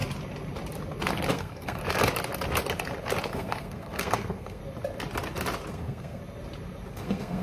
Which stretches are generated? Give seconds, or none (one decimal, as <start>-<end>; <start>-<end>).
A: 1.3-1.8; 3.3-4.6; 5.7-6.2; 6.9-7.4